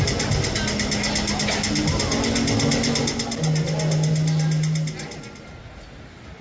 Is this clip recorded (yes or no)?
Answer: yes